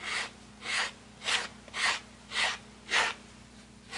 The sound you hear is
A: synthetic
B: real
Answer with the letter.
B